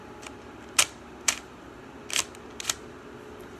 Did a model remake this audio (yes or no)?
no